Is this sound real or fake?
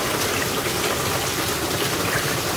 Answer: fake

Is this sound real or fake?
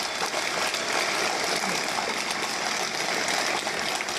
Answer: real